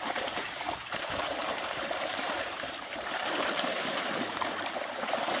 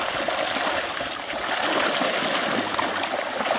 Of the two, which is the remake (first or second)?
first